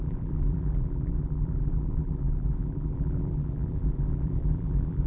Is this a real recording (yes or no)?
no